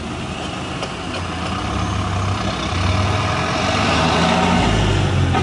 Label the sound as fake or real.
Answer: real